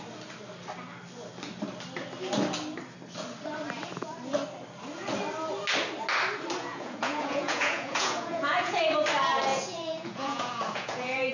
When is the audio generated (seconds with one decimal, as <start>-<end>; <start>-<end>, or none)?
6.6-8.8; 9.5-11.3